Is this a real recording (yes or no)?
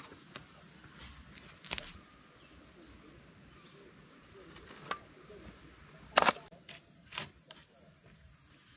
yes